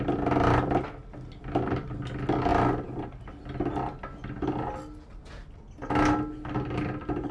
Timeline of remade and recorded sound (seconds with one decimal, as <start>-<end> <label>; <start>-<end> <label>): 0.0-7.3 recorded